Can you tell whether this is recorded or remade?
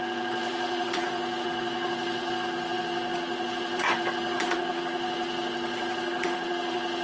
remade